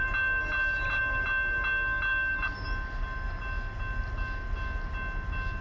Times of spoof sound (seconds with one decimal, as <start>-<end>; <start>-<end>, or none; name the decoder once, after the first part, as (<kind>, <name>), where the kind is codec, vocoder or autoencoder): none